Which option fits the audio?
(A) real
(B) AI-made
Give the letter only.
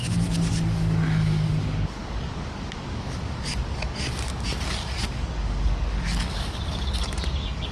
B